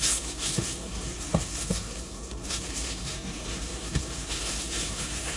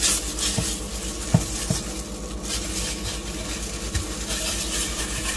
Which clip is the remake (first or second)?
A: first